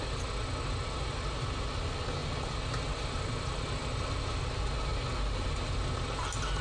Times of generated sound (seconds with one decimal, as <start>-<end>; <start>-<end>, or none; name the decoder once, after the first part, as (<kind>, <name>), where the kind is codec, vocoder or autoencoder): none